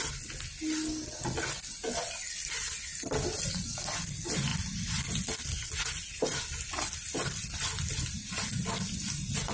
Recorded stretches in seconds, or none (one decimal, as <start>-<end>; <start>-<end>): 0.0-9.5